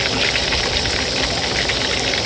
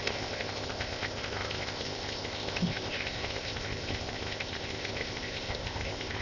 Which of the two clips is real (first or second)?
first